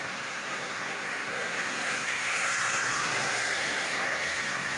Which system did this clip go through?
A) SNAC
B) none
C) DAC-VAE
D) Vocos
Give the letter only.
A